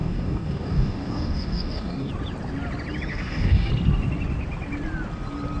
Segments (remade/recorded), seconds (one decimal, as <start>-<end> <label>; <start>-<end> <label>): 0.0-2.1 remade; 2.1-3.1 recorded; 3.1-3.7 remade; 3.7-5.6 recorded